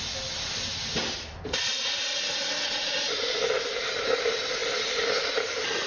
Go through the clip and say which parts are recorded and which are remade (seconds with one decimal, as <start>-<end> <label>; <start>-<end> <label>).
0.0-5.9 recorded